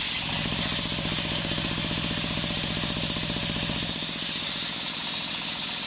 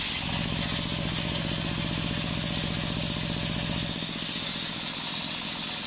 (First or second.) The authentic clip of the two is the second